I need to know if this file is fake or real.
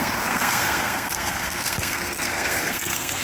fake